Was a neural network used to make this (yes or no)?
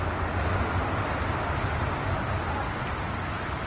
no